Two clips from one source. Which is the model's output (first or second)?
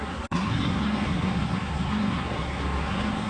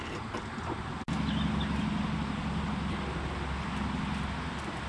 first